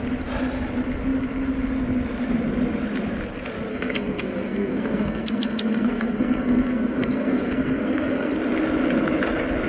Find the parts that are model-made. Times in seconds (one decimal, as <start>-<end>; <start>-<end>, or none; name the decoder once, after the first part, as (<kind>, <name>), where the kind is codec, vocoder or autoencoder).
3.7-8.3 (codec, SNAC)